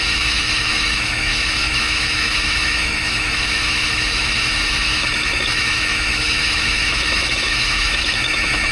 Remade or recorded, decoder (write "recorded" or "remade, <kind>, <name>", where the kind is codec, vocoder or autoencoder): remade, autoencoder, DAC-VAE